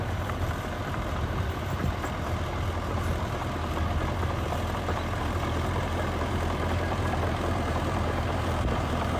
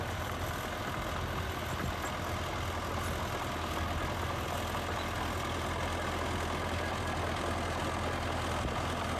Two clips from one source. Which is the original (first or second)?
second